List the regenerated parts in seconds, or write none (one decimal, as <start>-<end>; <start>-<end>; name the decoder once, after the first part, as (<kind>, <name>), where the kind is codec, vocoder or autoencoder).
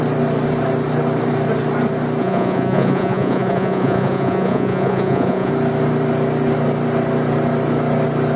2.2-5.5 (vocoder, Vocos)